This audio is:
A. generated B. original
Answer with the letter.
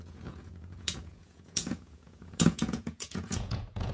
A